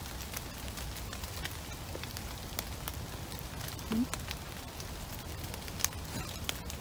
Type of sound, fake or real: real